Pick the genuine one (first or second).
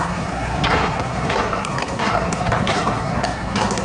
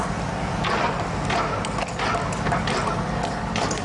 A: second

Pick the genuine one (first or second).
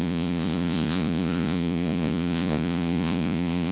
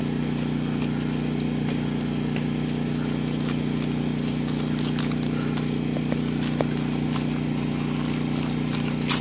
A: second